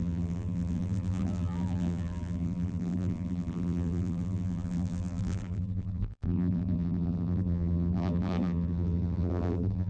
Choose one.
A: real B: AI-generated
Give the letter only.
B